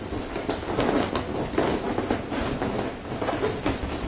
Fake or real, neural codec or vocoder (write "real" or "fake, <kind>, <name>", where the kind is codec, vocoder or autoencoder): real